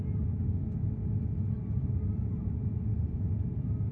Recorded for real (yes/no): yes